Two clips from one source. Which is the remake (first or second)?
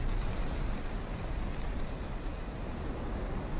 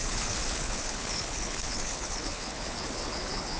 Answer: second